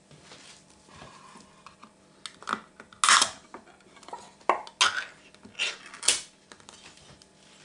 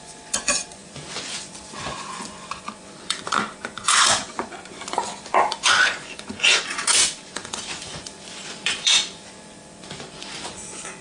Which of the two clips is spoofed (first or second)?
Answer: second